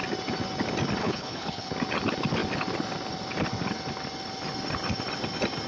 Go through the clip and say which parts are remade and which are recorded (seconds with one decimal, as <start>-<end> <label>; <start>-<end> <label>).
0.0-1.0 recorded; 1.0-1.7 remade; 1.7-5.7 recorded

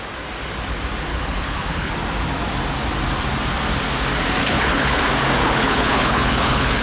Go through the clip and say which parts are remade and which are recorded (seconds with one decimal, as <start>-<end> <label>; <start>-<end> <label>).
0.0-1.1 recorded; 1.1-1.9 remade; 1.9-4.4 recorded; 4.4-5.0 remade; 5.0-5.4 recorded; 5.4-6.8 remade

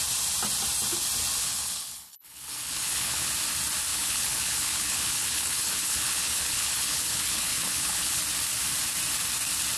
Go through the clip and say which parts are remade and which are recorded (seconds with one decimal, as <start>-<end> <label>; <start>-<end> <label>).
0.0-1.4 recorded; 1.4-3.3 remade; 3.3-3.9 recorded; 3.9-8.2 remade; 8.2-9.8 recorded

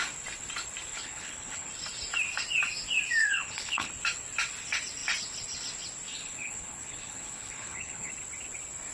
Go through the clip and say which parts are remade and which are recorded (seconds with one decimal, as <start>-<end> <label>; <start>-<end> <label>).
0.0-0.9 recorded; 0.9-1.7 remade; 1.7-3.2 recorded; 3.2-3.9 remade; 3.9-6.1 recorded; 6.1-8.1 remade; 8.1-8.9 recorded

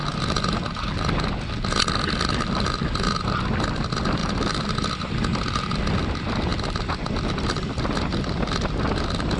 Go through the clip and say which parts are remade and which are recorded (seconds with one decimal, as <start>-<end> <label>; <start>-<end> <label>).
0.0-9.4 recorded

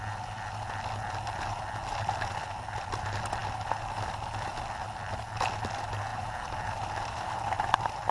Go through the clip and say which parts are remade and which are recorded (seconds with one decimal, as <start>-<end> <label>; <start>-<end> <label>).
0.0-8.1 recorded

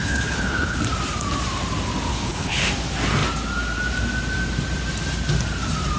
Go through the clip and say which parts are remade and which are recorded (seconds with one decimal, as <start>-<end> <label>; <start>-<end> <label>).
0.0-0.8 remade; 0.8-2.1 recorded; 2.1-2.7 remade; 2.7-6.0 recorded

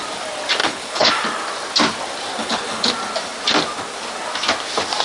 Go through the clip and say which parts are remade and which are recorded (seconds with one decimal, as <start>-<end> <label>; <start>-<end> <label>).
0.0-0.6 recorded; 0.6-1.1 remade; 1.1-2.4 recorded; 2.4-2.9 remade; 2.9-5.0 recorded